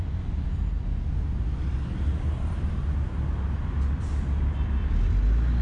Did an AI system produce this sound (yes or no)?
no